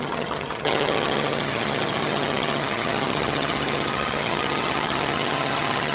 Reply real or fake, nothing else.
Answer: fake